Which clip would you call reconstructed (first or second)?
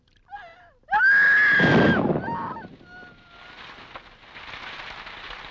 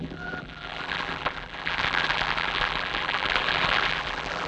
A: second